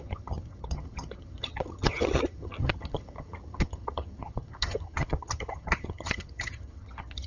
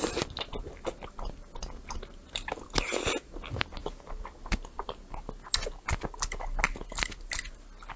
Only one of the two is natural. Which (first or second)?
second